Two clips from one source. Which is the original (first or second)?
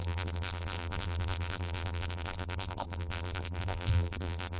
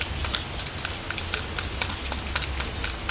second